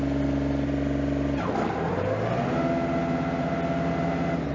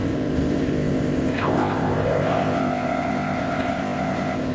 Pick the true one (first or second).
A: first